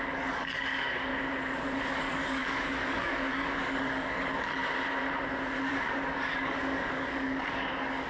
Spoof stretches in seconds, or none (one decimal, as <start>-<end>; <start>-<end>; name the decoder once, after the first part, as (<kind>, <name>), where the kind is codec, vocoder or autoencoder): 0.0-1.1 (codec, DAC); 1.9-4.6; 5.6-8.1